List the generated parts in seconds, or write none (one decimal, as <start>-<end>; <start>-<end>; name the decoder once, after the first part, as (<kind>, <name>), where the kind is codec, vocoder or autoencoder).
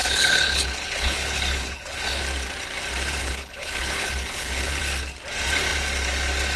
0.0-2.2 (codec, HILCodec); 3.2-4.8